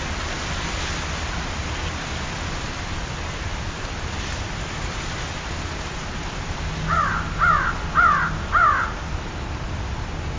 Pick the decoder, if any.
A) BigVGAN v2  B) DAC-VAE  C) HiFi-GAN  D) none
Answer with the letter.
D